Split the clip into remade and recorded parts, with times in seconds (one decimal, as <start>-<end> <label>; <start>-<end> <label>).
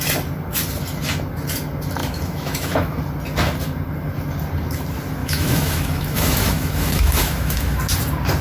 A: 0.0-2.0 recorded; 2.0-3.0 remade; 3.0-5.2 recorded; 5.2-7.8 remade; 7.8-8.4 recorded